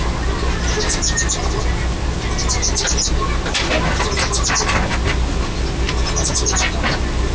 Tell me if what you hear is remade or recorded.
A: recorded